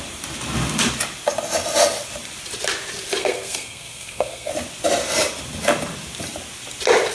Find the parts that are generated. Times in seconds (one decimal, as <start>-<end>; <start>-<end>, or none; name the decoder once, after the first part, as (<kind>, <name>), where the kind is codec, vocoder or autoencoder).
3.2-4.5 (codec, SNAC)